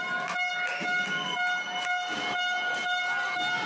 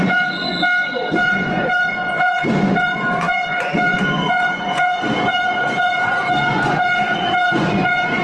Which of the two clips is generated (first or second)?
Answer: second